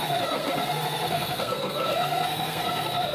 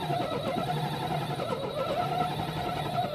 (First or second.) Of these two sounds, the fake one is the first